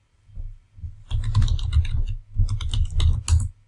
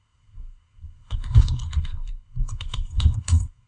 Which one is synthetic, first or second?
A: second